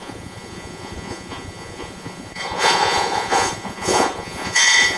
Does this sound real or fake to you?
fake